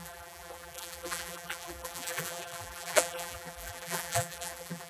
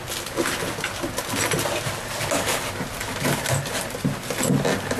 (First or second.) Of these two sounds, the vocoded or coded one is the first